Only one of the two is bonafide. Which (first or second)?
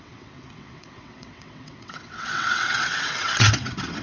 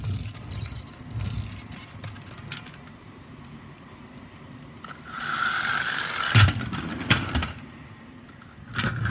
second